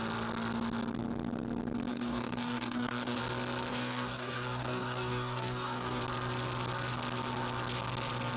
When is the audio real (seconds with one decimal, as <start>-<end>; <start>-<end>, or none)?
0.0-1.9; 3.2-3.7; 6.0-8.4